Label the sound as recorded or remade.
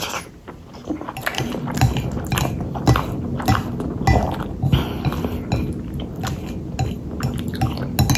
recorded